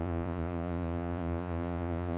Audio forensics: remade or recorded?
remade